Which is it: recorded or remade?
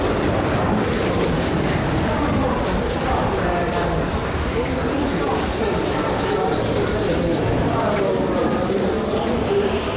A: remade